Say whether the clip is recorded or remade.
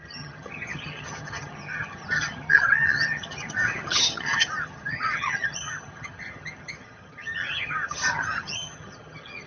remade